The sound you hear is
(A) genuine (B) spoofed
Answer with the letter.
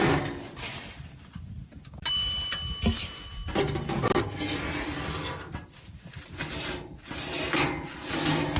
A